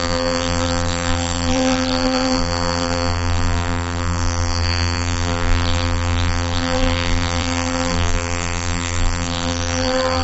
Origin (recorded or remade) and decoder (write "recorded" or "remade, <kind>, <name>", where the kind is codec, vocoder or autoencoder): remade, vocoder, BigVGAN v2